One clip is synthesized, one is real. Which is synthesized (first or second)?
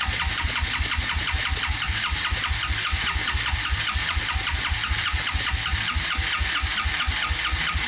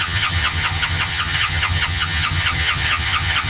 second